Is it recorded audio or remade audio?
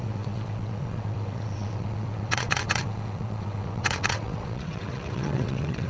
remade